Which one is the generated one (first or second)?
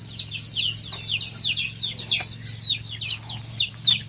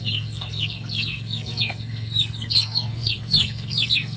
second